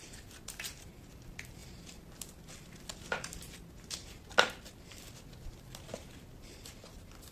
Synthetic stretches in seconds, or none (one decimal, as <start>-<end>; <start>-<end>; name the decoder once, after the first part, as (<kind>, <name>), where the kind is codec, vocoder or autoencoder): none

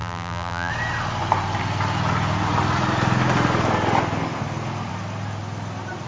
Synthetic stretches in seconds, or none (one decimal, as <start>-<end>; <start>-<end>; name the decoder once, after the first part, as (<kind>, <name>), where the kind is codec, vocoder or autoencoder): 0.0-0.7 (vocoder, BigVGAN v2)